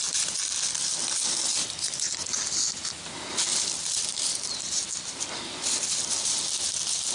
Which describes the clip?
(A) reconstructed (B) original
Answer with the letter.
B